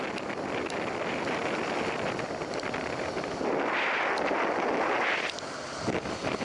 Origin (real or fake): real